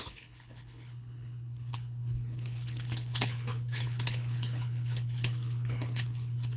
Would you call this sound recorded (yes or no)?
no